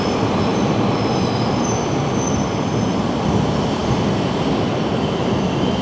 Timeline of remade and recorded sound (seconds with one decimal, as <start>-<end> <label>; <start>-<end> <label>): 0.0-5.8 recorded